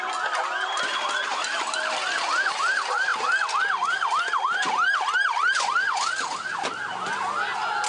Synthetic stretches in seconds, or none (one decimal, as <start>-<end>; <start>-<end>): none